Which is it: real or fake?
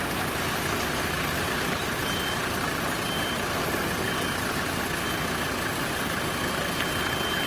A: real